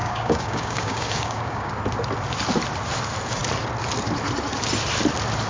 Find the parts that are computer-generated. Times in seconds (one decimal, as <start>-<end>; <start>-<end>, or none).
0.0-1.7